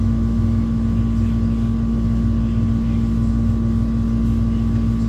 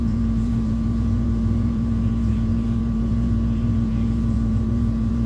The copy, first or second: second